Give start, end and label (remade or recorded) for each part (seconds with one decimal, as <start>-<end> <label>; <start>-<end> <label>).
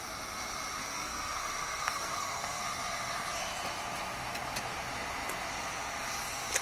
0.0-0.8 recorded; 0.8-2.6 remade; 2.6-6.6 recorded